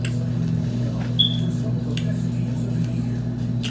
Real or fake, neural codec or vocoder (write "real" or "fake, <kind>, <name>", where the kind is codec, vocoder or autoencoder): real